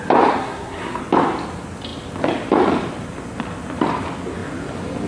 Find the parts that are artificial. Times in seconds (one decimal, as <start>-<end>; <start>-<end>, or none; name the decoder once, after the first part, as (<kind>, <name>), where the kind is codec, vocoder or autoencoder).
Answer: 0.4-1.0 (codec, SNAC)